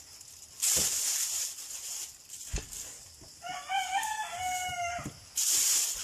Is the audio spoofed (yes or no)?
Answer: no